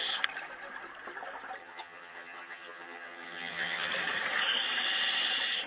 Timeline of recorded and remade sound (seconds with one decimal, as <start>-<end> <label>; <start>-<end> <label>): 0.0-1.6 recorded; 1.6-3.9 remade; 3.9-5.7 recorded